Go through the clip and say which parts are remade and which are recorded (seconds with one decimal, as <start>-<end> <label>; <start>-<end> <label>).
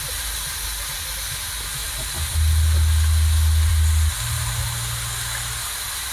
0.0-6.1 recorded